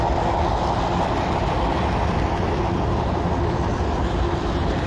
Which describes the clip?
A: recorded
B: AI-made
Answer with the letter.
A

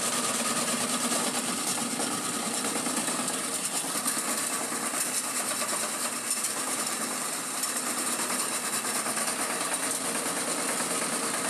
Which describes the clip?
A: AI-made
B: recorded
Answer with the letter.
A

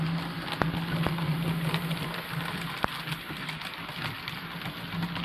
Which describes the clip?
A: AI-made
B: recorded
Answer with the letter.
B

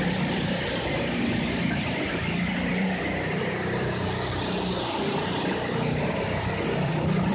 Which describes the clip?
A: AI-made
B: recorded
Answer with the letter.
A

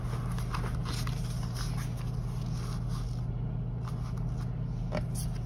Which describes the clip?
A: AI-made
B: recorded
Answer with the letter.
B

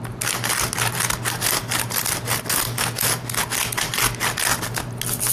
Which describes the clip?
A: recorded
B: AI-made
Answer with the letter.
A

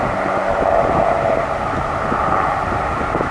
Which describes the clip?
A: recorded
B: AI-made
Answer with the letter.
A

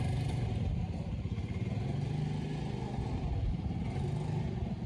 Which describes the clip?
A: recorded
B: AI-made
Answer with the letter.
A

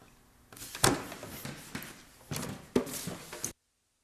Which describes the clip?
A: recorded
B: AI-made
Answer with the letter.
A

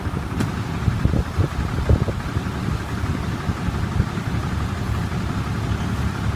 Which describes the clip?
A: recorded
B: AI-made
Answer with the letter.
B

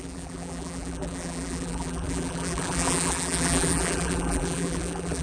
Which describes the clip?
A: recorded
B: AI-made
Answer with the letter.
B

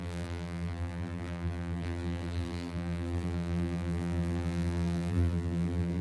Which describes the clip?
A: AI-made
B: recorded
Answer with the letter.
A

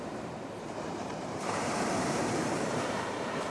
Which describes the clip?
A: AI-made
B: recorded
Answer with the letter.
A